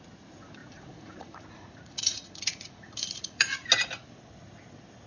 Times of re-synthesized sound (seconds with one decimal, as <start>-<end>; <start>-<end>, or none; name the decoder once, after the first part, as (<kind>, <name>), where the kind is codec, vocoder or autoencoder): 0.6-3.7 (vocoder, Vocos)